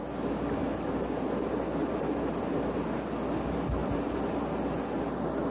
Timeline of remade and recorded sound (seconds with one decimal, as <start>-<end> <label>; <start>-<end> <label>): 0.0-5.5 recorded